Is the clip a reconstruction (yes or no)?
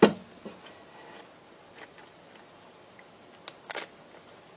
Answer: no